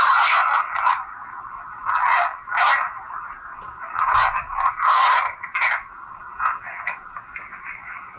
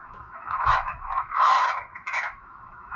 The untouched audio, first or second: first